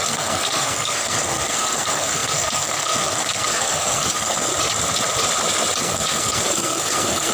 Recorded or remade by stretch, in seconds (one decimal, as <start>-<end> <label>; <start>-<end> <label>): 0.0-4.5 remade; 4.5-5.8 recorded; 5.8-7.3 remade